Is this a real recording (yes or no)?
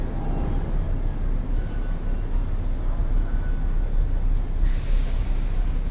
yes